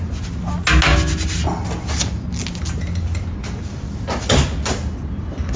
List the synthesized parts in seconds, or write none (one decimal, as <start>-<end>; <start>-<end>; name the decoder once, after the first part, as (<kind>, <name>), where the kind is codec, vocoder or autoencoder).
none